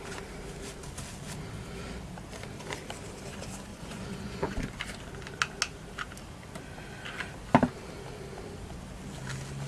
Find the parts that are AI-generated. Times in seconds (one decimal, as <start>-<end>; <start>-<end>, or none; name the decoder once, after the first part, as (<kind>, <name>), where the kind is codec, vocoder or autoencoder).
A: 3.7-4.6 (vocoder, Vocos)